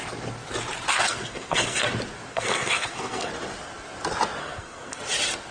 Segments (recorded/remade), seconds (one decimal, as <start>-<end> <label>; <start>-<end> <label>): 0.0-0.9 recorded; 0.9-1.9 remade; 1.9-2.3 recorded; 2.3-3.3 remade; 3.3-4.4 recorded; 4.4-5.0 remade; 5.0-5.5 recorded